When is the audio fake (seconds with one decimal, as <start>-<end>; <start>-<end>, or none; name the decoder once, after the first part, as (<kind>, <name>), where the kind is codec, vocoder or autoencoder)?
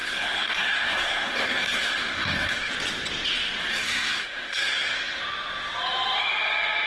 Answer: 0.0-2.7 (codec, SNAC); 3.7-5.2